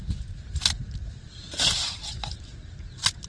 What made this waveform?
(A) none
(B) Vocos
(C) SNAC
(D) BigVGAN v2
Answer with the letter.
A